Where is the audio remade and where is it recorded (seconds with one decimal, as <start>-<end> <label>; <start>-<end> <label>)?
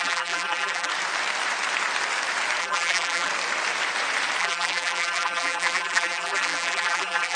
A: 0.0-0.9 remade; 0.9-2.6 recorded; 2.6-3.3 remade; 3.3-4.4 recorded; 4.4-7.4 remade